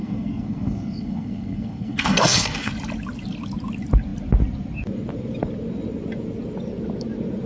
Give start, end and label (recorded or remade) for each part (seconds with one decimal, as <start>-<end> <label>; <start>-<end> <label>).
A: 0.0-2.7 remade; 2.7-7.5 recorded